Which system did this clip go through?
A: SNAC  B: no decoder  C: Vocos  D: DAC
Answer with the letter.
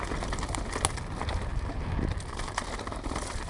B